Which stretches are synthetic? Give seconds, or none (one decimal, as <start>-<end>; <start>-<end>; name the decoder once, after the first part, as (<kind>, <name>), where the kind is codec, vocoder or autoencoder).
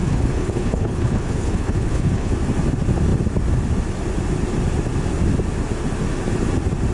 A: 0.0-2.3 (codec, HILCodec)